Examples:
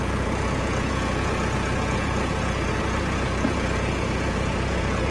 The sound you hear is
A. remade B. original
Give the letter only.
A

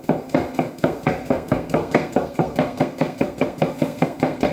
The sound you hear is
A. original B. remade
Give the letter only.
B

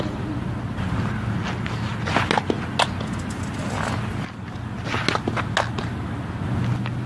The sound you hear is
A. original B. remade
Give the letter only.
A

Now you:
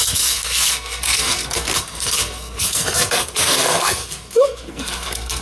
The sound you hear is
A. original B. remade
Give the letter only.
B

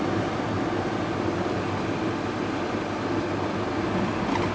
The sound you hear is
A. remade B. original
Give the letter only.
B